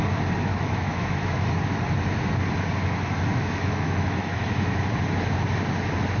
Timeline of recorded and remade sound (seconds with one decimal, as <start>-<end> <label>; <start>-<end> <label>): 0.0-0.5 recorded; 0.5-1.5 remade; 1.5-3.3 recorded; 3.3-4.8 remade; 4.8-6.2 recorded